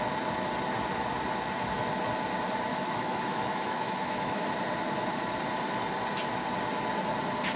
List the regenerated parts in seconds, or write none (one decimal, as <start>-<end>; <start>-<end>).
2.7-4.5